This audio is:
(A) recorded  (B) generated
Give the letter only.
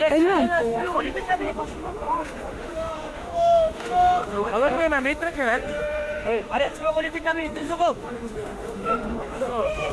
B